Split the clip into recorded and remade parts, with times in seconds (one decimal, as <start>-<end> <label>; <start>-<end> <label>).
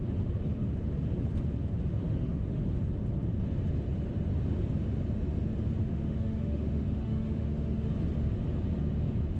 0.0-1.9 recorded; 1.9-2.6 remade; 2.6-5.8 recorded; 5.8-7.9 remade; 7.9-9.4 recorded